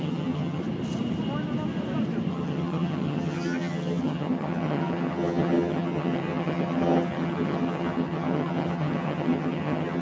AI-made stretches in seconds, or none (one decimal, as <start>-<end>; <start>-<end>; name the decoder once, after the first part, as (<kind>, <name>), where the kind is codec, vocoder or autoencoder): 0.0-0.6 (vocoder, HiFi-GAN); 2.3-10.0